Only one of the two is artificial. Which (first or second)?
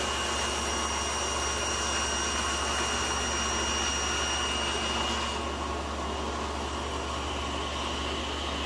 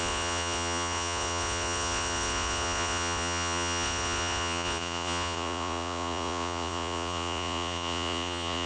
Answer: second